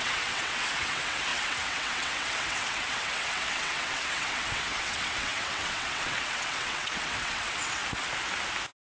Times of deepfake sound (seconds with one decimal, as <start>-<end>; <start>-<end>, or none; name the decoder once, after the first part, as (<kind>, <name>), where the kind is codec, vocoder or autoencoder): 0.0-7.8 (vocoder, WaveNeXt)

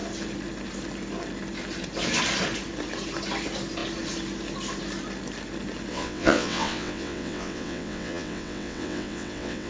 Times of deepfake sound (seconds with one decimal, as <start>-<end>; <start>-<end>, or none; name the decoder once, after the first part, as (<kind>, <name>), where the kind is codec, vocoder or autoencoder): 5.9-9.7 (vocoder, WaveNeXt)

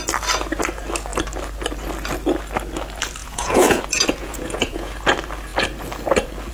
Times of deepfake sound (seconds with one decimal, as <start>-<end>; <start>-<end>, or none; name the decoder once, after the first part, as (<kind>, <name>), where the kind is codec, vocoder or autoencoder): 3.2-3.8 (vocoder, Vocos); 4.2-4.9

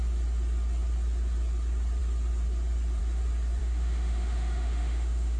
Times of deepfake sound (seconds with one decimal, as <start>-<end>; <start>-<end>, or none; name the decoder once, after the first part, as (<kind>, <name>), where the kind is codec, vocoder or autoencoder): 3.6-5.4 (autoencoder, DAC-VAE)

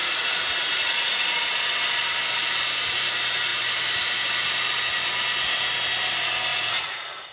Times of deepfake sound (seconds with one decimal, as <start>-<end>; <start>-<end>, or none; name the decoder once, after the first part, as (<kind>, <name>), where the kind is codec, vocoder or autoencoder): 0.0-1.5 (vocoder, Vocos); 6.5-7.3